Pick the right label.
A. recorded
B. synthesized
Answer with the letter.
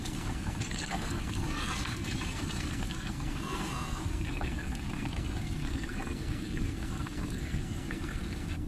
B